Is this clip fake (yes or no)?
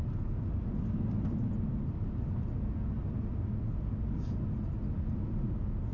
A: no